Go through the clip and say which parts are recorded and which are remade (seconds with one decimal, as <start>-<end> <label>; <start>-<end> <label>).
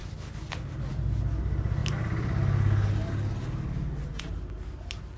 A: 0.0-5.2 recorded